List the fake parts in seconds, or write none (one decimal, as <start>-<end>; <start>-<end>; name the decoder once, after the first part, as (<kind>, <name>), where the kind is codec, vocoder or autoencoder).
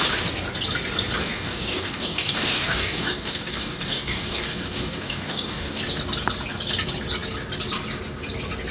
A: 1.2-5.8 (codec, DAC)